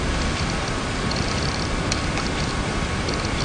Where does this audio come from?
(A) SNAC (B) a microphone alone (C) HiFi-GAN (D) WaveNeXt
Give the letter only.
B